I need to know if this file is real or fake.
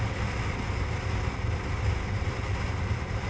real